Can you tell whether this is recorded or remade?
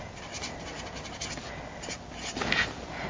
recorded